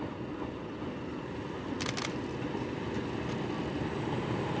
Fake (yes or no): no